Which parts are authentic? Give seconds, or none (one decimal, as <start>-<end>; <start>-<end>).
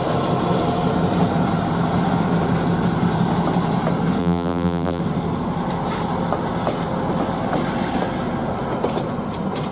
0.0-4.2; 5.0-9.7